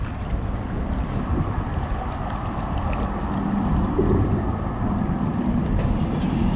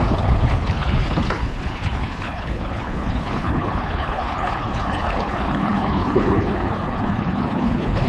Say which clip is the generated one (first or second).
second